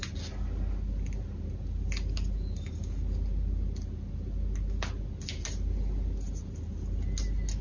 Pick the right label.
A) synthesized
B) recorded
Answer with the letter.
B